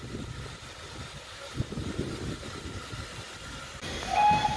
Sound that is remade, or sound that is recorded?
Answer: recorded